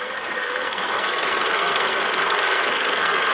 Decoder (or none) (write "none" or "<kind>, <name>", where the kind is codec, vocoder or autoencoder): codec, SNAC